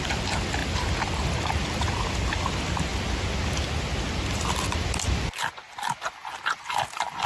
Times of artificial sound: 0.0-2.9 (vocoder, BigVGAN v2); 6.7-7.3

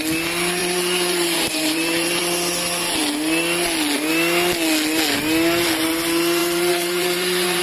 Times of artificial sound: 0.6-2.2 (vocoder, BigVGAN v2); 6.4-7.6